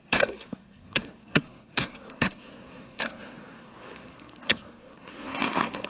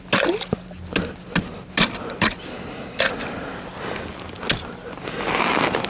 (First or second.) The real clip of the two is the second